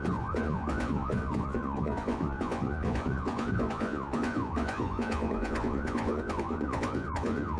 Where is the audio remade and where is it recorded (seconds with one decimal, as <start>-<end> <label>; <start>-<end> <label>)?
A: 0.0-7.6 remade